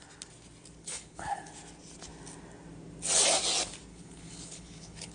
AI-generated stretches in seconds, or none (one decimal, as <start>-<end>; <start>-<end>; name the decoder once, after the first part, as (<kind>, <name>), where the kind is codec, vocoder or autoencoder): 0.8-1.5 (codec, HILCodec); 3.9-5.1